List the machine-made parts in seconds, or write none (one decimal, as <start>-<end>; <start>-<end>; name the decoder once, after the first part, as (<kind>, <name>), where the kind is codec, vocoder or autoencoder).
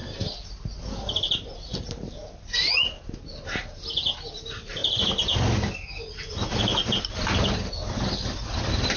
none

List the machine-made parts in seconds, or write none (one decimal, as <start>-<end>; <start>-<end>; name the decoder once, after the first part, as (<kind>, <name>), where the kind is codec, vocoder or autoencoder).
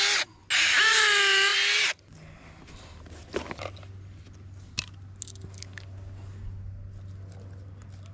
none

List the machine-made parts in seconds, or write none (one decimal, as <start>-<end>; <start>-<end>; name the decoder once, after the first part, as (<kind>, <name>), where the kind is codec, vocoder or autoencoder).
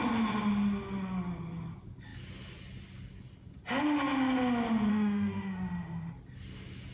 4.9-6.1 (autoencoder, DAC-VAE)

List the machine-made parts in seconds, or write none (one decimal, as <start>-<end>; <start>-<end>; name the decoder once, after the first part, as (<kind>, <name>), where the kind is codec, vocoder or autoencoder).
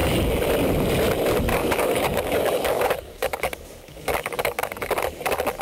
1.5-4.9 (codec, DAC)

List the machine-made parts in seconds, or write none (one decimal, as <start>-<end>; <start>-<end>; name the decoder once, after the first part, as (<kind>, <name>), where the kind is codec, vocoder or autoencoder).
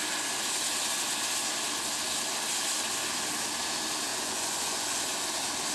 4.1-5.0 (vocoder, Vocos)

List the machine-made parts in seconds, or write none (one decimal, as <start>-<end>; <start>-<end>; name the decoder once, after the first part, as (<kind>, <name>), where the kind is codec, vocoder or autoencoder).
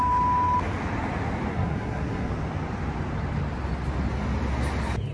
1.5-2.3 (codec, SNAC)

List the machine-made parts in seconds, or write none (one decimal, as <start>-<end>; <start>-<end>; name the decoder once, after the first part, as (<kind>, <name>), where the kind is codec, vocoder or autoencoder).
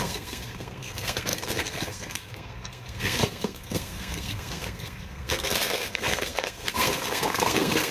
0.0-7.9 (codec, SNAC)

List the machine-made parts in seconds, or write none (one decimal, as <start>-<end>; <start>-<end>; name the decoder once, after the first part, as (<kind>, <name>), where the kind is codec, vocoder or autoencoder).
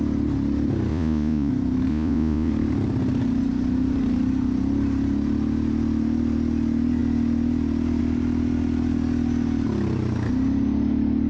0.9-1.5 (vocoder, Vocos); 1.9-2.5